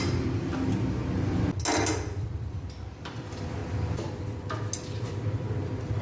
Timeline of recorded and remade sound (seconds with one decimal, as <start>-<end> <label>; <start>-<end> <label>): 0.0-0.5 remade; 0.5-1.9 recorded; 1.9-3.6 remade; 3.6-5.0 recorded; 5.0-6.0 remade